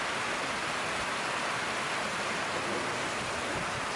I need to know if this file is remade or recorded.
recorded